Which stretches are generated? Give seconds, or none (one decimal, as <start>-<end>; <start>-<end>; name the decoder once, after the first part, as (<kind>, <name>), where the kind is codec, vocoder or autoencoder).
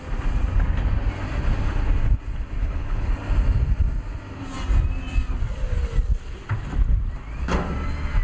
2.6-3.1 (codec, HILCodec)